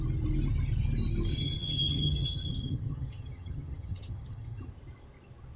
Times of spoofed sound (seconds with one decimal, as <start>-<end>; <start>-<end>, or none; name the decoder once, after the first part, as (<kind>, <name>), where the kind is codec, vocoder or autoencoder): 1.3-4.7 (vocoder, HiFi-GAN)